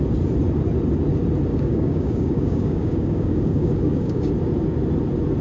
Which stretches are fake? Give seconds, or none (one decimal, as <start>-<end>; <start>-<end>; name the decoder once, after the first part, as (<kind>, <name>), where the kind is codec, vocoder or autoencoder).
1.5-4.3 (codec, DAC)